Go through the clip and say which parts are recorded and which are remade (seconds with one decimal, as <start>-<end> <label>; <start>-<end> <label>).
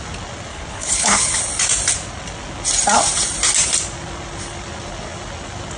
0.0-0.5 recorded; 0.5-1.4 remade; 1.4-5.8 recorded